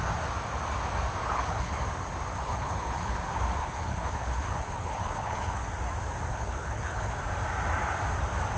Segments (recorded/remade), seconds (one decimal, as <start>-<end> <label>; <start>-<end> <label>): 0.0-1.2 recorded; 1.2-1.8 remade; 1.8-2.3 recorded; 2.3-3.2 remade; 3.2-3.6 recorded; 3.6-5.7 remade; 5.7-6.3 recorded; 6.3-7.2 remade; 7.2-8.6 recorded